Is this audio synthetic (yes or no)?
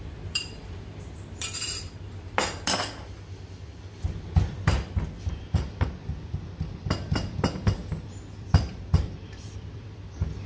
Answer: yes